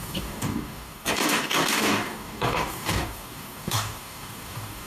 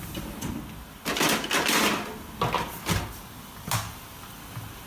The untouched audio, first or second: second